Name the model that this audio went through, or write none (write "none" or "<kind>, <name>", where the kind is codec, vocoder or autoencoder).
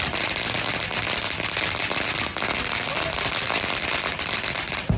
none